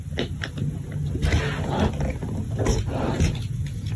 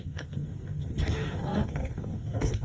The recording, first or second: first